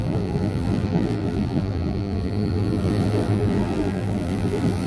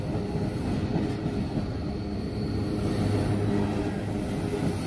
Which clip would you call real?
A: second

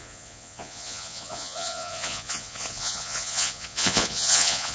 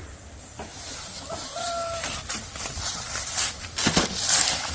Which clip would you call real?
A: second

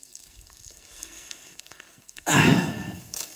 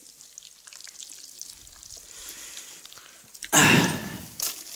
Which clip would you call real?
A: second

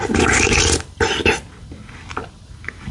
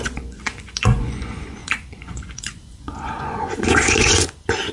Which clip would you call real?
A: first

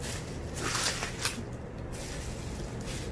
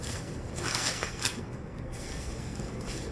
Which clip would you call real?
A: first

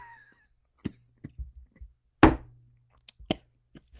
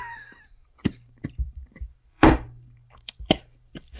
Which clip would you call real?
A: first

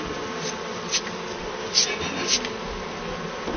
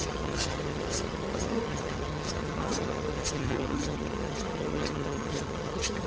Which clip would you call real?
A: first